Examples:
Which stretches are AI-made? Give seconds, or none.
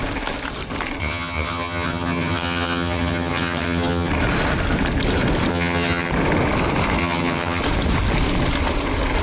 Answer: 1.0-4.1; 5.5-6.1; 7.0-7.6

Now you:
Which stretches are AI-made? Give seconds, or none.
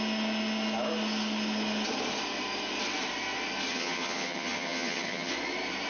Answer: 3.7-5.3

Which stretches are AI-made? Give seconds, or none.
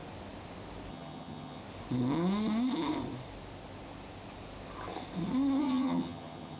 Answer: 0.9-1.6; 5.6-6.6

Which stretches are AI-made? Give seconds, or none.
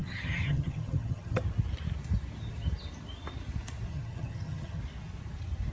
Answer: 0.0-1.4; 3.9-4.8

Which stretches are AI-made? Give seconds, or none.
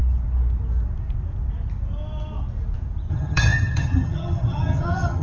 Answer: 3.1-5.2